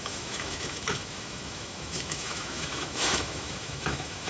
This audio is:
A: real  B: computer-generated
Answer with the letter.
B